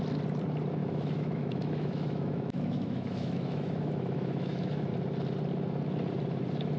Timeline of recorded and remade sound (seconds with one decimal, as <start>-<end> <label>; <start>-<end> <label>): 0.0-0.8 recorded; 0.8-4.9 remade; 4.9-6.8 recorded